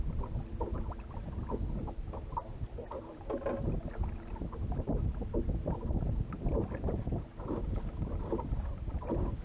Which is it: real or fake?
real